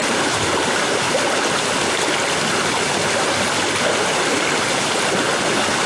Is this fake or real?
real